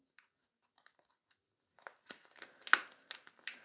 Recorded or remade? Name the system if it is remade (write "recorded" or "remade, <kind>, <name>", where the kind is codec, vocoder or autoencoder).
recorded